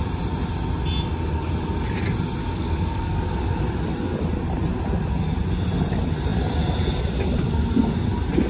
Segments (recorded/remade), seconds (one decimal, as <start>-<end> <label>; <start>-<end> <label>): 0.0-2.4 recorded; 2.4-3.5 remade; 3.5-8.5 recorded